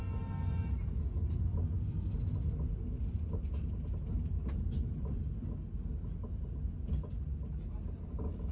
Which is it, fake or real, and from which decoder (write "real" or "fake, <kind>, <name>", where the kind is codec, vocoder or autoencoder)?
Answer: real